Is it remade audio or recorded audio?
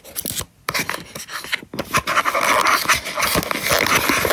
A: recorded